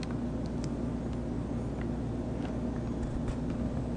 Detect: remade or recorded recorded